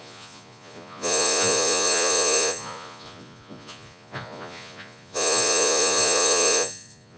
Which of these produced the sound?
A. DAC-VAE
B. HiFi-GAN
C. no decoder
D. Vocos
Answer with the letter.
D